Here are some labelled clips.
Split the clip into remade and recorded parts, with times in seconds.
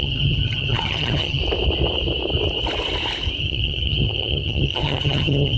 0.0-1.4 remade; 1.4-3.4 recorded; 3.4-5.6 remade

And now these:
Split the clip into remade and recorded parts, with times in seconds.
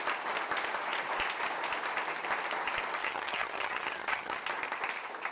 0.0-3.0 recorded; 3.0-4.4 remade; 4.4-5.3 recorded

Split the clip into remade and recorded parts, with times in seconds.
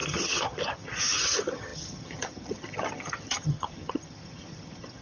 0.0-5.0 remade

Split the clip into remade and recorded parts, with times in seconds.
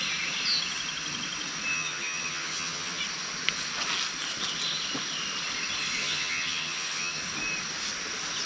0.0-1.7 recorded; 1.7-3.0 remade; 3.0-6.0 recorded; 6.0-7.2 remade; 7.2-8.5 recorded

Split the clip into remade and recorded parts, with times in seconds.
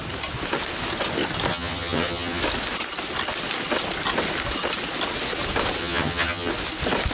0.0-1.5 recorded; 1.5-2.4 remade; 2.4-5.8 recorded; 5.8-6.5 remade; 6.5-7.1 recorded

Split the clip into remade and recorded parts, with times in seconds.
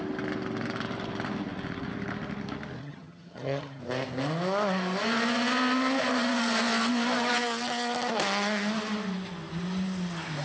0.0-2.8 recorded; 2.8-3.8 remade; 3.8-10.4 recorded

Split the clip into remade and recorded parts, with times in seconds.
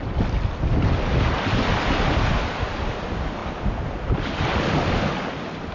0.0-5.7 recorded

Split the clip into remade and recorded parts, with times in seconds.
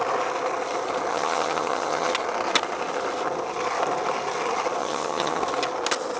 0.0-1.1 recorded; 1.1-2.1 remade; 2.1-4.8 recorded; 4.8-5.4 remade; 5.4-6.2 recorded